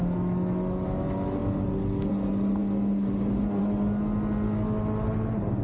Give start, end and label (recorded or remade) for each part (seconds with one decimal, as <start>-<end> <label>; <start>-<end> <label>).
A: 0.0-5.6 recorded